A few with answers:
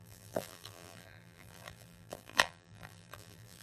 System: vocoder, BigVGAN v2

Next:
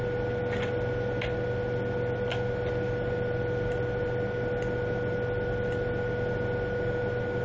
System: none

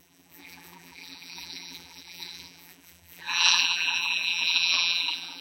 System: vocoder, BigVGAN v2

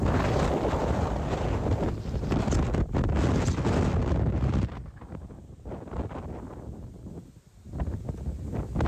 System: none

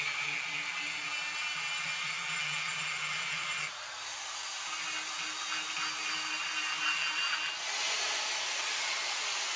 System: none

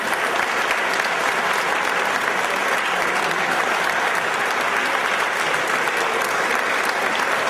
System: vocoder, BigVGAN v2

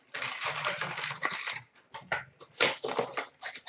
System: none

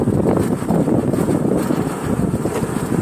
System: none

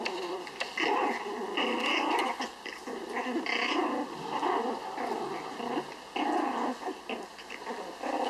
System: none